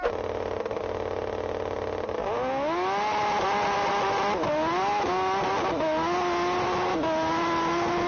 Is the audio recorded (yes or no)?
yes